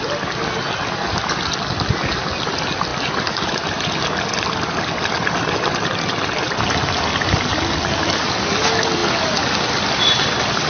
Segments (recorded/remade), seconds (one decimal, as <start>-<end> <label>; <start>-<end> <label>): 0.0-10.7 recorded